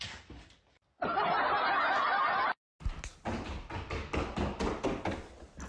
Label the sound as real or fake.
real